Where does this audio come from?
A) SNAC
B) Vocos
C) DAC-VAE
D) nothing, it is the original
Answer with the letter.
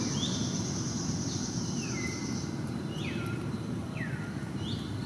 D